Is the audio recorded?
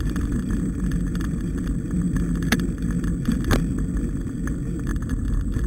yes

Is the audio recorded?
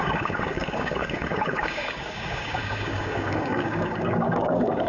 no